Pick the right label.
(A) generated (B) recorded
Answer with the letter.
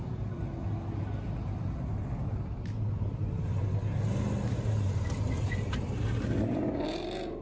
B